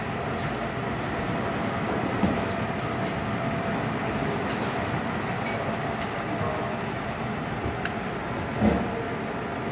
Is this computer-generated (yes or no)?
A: no